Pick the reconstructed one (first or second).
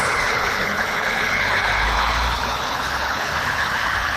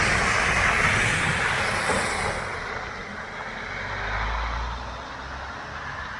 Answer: first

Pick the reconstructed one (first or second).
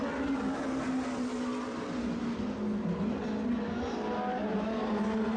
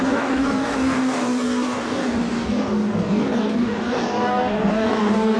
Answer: second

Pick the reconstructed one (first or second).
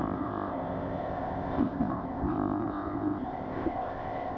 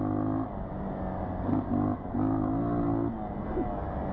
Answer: first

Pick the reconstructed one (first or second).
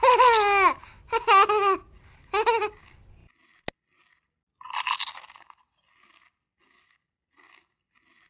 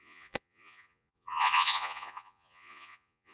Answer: second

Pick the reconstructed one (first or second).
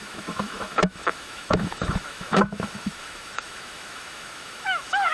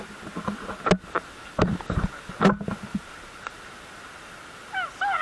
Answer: first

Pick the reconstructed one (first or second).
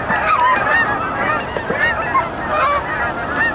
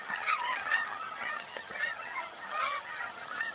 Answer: second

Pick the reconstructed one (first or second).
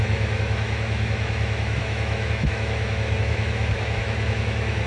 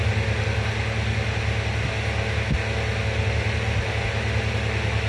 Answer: first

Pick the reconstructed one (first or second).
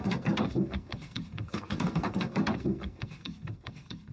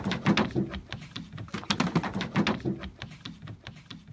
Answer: first